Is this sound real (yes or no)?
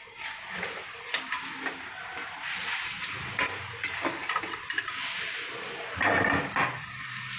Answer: yes